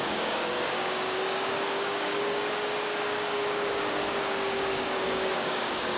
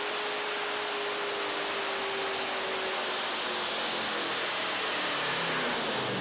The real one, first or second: second